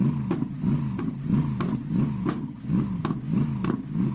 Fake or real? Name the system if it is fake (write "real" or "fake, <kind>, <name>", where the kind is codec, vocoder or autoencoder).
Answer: real